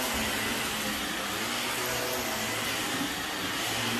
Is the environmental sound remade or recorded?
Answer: recorded